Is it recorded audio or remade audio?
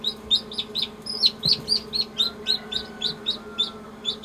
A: recorded